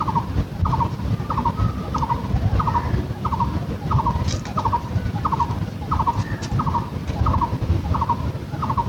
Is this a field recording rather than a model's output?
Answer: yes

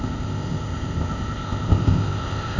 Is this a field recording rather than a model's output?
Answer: no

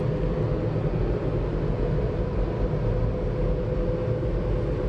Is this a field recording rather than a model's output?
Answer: yes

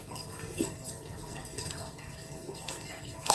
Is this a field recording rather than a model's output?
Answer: no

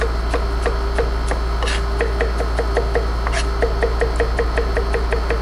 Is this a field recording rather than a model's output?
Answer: yes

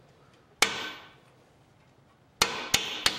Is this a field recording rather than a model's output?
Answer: yes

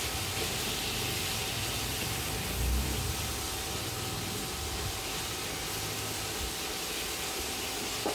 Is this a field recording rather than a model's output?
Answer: yes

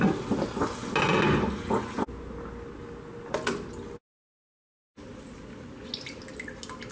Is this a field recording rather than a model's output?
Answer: yes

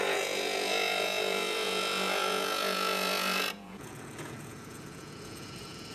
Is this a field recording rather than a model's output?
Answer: no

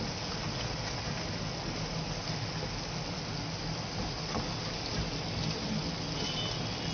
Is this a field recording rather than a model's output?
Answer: yes